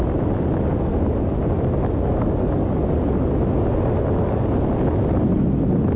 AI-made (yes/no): no